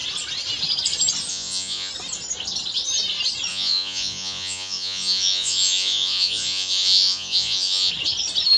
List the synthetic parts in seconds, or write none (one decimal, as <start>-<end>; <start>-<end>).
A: 1.3-1.9; 3.5-7.9